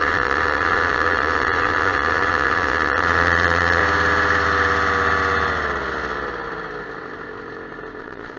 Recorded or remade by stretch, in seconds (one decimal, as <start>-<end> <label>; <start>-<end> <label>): 0.0-3.8 remade; 3.8-8.0 recorded; 8.0-8.4 remade